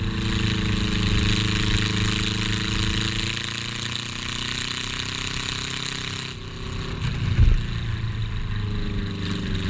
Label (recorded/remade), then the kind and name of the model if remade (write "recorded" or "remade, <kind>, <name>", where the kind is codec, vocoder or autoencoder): recorded